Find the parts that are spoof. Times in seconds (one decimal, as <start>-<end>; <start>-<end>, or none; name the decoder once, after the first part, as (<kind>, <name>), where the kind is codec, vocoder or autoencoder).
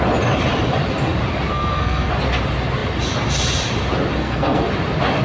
1.5-2.1 (codec, SNAC); 4.2-4.7